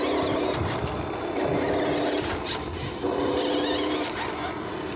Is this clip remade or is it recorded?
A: recorded